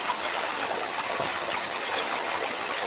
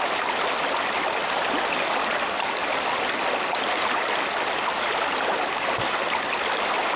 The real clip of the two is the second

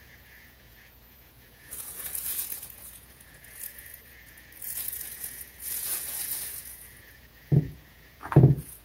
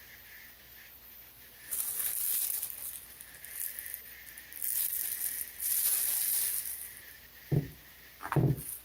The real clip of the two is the second